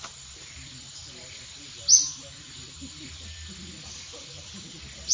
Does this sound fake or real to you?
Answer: real